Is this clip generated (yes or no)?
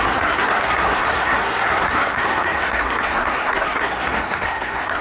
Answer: yes